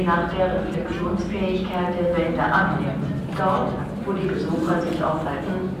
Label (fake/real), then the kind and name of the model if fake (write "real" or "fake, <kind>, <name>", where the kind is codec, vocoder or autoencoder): real